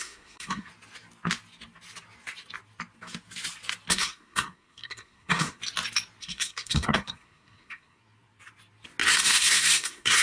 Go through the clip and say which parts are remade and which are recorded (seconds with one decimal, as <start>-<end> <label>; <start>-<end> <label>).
0.0-0.7 remade; 0.7-3.9 recorded; 3.9-5.6 remade; 5.6-6.2 recorded; 6.2-8.0 remade; 8.0-9.1 recorded; 9.1-10.2 remade